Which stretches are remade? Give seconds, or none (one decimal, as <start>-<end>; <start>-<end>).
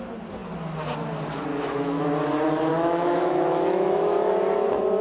1.5-2.0; 2.7-4.3